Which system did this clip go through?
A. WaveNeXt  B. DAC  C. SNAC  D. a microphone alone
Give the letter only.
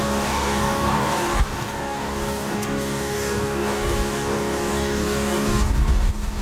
B